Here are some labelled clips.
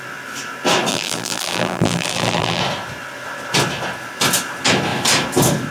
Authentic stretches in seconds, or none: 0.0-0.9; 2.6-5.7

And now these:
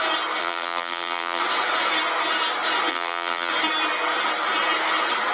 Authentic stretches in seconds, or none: 0.0-0.4; 1.4-2.9; 3.5-5.3

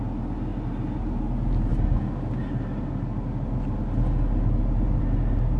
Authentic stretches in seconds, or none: 0.0-5.6